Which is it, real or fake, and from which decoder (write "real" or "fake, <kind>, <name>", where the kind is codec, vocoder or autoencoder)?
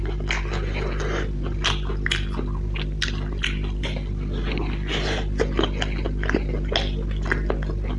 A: real